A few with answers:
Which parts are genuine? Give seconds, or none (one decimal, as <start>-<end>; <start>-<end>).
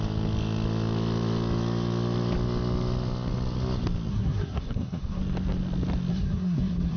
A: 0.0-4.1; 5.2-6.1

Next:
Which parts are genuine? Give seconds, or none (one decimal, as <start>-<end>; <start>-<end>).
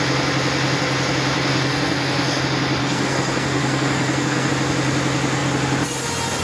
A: 0.0-1.5; 2.4-2.8; 4.5-6.4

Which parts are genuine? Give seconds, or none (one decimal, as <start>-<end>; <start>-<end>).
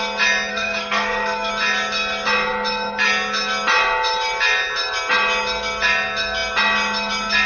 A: 0.0-0.5; 1.5-7.5